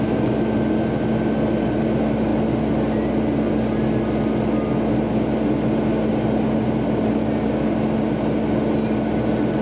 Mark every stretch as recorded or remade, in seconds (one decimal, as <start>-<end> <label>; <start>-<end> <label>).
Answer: 0.0-9.6 recorded